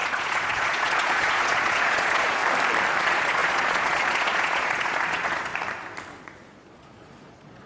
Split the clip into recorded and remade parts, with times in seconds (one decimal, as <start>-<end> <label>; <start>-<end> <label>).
0.0-2.4 remade; 2.4-3.0 recorded; 3.0-5.5 remade; 5.5-6.2 recorded; 6.2-7.7 remade

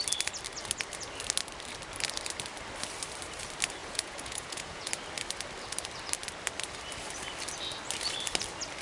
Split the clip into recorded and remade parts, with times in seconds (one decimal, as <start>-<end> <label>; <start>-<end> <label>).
0.0-3.8 recorded; 3.8-4.9 remade; 4.9-8.8 recorded

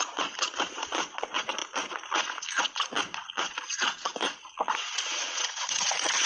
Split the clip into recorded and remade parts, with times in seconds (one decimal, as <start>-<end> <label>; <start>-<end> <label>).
0.0-6.3 remade

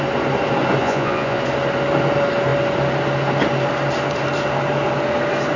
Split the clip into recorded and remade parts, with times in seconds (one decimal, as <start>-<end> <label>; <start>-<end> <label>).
0.0-0.8 recorded; 0.8-1.4 remade; 1.4-5.6 recorded